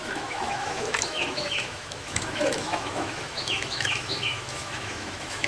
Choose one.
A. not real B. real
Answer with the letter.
A